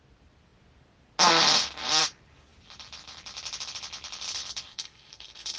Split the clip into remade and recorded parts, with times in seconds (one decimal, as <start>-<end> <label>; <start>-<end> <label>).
0.0-4.7 recorded; 4.7-5.6 remade